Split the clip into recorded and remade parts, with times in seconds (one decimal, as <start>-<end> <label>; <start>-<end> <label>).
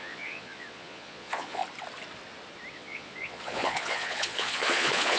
0.0-1.6 remade; 1.6-2.7 recorded; 2.7-5.2 remade